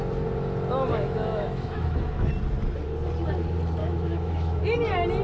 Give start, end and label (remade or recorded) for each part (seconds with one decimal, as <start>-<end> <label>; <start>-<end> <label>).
0.0-0.9 recorded; 0.9-2.3 remade; 2.3-3.8 recorded; 3.8-4.6 remade; 4.6-5.2 recorded